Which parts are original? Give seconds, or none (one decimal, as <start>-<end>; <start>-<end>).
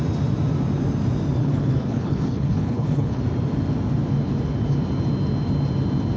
0.0-1.4; 3.2-6.2